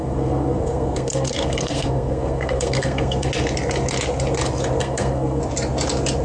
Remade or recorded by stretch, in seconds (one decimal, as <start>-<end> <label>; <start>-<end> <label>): 0.0-3.3 remade; 3.3-4.8 recorded; 4.8-5.4 remade; 5.4-6.2 recorded